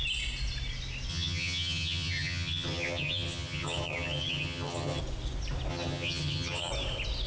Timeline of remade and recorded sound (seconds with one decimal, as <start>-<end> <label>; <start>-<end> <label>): 0.0-1.1 recorded; 1.1-5.0 remade; 5.0-5.7 recorded; 5.7-6.7 remade; 6.7-7.3 recorded